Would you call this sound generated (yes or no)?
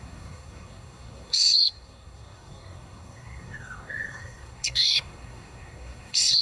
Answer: yes